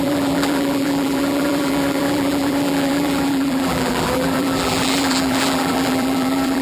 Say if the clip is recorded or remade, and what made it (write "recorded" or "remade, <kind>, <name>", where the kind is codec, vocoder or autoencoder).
remade, vocoder, BigVGAN v2